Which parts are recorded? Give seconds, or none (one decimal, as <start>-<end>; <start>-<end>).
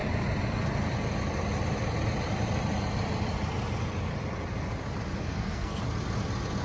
0.0-5.2; 5.8-6.6